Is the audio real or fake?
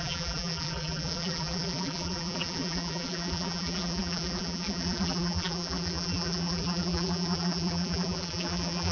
fake